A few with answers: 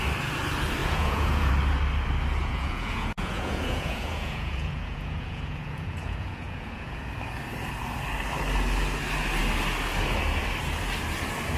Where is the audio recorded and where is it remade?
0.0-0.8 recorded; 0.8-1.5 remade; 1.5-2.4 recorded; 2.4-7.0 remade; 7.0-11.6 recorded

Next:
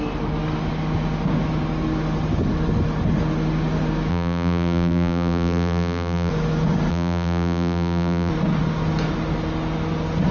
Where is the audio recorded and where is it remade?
0.0-4.1 recorded; 4.1-6.3 remade; 6.3-6.9 recorded; 6.9-8.3 remade; 8.3-10.3 recorded